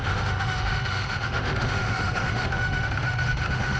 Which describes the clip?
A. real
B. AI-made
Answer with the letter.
B